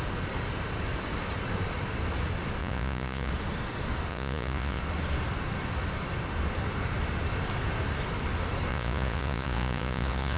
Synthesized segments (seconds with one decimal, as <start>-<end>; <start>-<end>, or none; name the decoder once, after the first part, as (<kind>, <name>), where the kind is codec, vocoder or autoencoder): 2.6-3.3 (vocoder, Vocos); 4.1-4.8; 8.7-10.4